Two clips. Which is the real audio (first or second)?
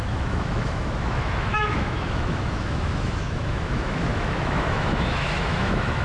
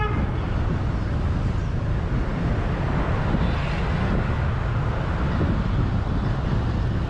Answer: second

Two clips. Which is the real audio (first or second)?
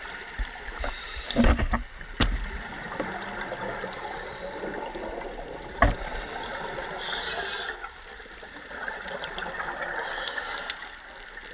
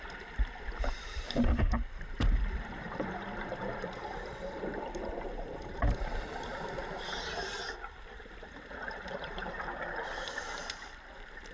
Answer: first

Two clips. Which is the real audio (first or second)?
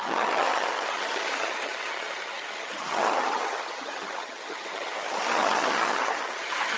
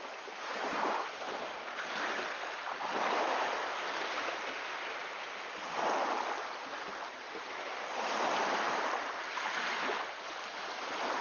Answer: second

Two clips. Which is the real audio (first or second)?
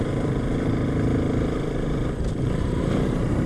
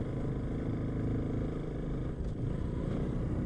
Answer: second